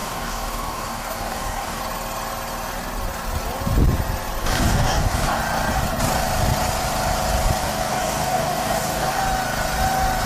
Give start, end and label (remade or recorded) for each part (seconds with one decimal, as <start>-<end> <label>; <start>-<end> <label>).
0.0-1.8 remade; 1.8-4.4 recorded; 4.4-5.4 remade; 5.4-7.6 recorded; 7.6-9.2 remade; 9.2-10.3 recorded